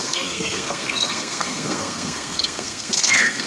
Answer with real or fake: fake